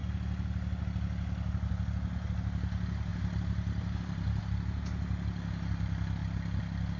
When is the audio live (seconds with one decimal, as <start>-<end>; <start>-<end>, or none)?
0.0-3.1; 4.4-7.0